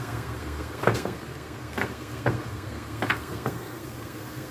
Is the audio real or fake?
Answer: fake